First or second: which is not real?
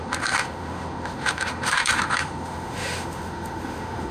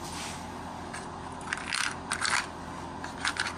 first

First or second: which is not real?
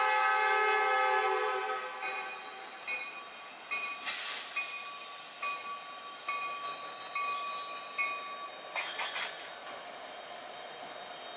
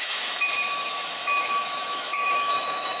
second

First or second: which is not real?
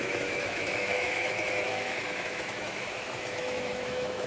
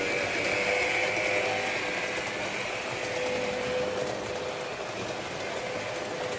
first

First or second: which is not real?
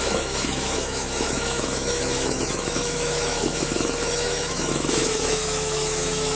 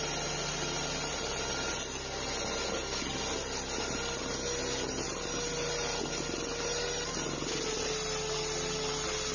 first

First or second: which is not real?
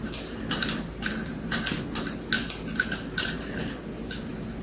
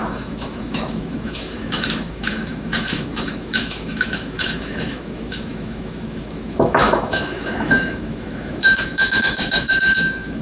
second